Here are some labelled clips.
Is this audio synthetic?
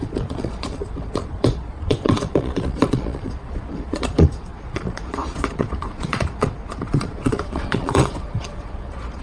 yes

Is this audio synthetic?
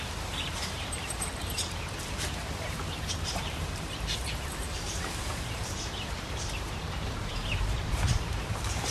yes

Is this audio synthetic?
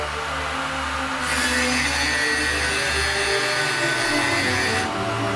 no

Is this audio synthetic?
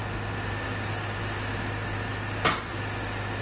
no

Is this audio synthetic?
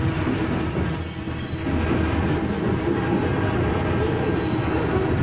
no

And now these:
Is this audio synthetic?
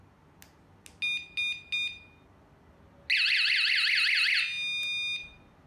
no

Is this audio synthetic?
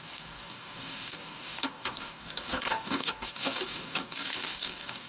yes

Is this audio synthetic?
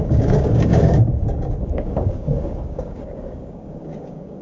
yes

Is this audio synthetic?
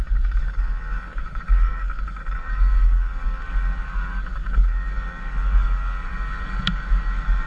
yes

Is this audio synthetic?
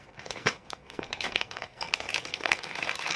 yes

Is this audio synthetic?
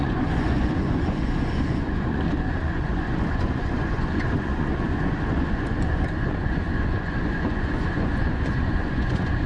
yes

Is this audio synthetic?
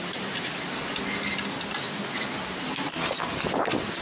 no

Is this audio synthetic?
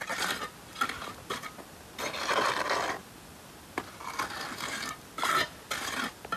no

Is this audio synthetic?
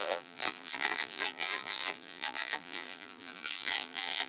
yes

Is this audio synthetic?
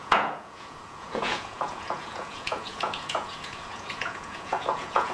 yes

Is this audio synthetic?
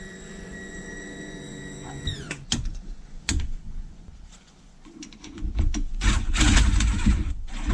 yes